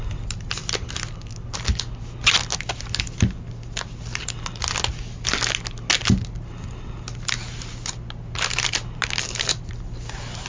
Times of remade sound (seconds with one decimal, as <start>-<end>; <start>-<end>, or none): none